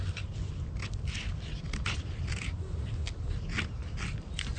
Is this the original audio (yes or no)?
yes